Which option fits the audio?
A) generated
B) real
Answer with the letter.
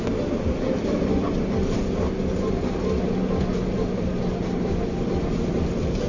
B